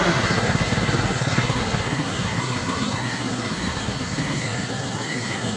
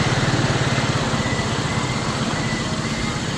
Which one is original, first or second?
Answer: second